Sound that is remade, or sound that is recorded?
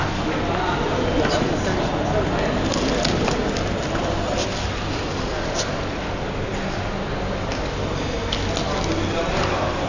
recorded